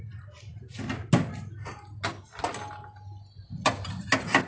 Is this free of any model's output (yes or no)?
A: yes